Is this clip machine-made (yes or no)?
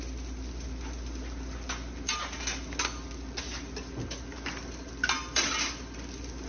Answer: no